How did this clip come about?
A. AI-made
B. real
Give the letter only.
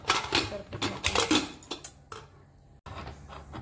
B